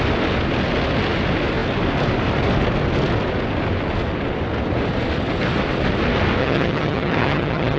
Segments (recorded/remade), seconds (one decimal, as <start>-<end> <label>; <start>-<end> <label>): 0.0-6.4 recorded; 6.4-7.8 remade